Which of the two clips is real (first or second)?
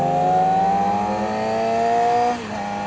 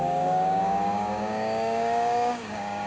first